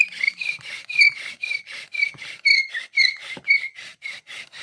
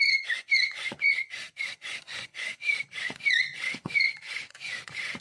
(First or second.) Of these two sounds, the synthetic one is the second